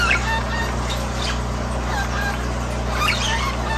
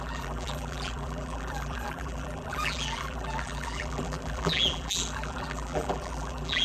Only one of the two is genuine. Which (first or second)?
first